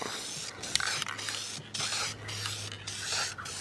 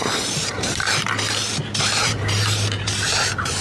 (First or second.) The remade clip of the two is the second